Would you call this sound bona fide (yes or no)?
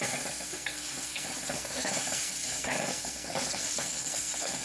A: no